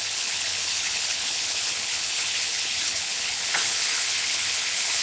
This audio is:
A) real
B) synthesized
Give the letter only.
B